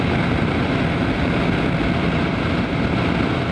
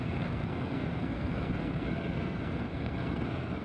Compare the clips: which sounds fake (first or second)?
second